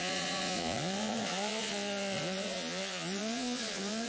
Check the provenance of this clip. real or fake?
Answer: fake